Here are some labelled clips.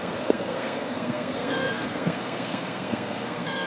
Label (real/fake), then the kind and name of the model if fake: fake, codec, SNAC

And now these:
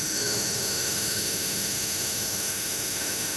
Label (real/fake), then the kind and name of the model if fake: fake, autoencoder, DAC-VAE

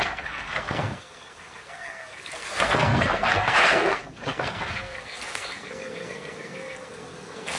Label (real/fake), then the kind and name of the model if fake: fake, codec, SNAC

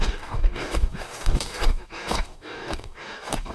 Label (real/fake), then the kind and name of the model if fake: fake, codec, DAC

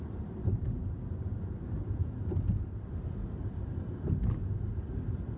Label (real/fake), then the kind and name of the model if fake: real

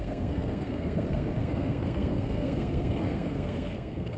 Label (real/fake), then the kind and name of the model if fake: fake, codec, SNAC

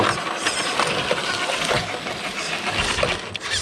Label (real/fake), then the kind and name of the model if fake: real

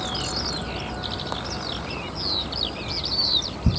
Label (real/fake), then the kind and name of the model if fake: real